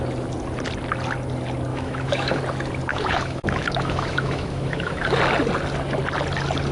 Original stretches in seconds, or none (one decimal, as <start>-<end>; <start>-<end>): 0.0-1.7; 2.4-2.9; 5.2-6.7